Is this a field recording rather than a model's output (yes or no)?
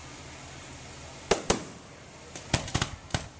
yes